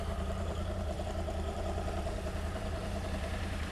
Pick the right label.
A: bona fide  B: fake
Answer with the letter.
B